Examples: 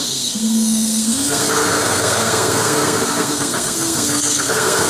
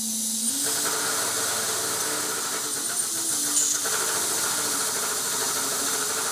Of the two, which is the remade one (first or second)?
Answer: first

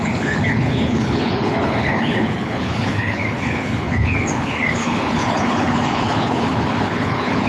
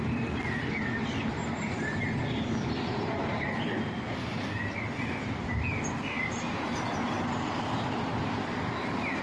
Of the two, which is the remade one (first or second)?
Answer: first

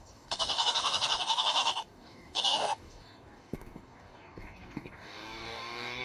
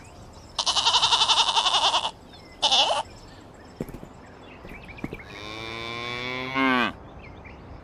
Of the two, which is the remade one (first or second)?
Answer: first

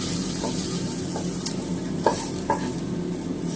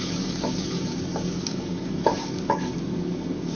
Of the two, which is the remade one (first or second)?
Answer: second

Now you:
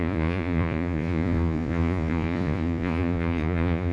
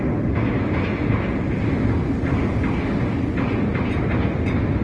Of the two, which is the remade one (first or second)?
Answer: first